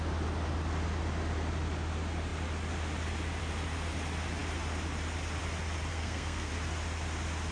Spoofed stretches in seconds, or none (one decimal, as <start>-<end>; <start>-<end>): 5.9-6.5